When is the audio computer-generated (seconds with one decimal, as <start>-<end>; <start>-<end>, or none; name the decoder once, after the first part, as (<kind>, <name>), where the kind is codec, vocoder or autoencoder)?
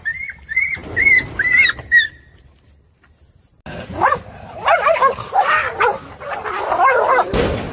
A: none